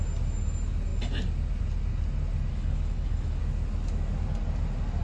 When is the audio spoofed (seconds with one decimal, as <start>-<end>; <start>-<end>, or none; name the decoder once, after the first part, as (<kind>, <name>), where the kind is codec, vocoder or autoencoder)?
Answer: 2.5-3.4 (codec, HILCodec)